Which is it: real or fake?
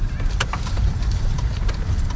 fake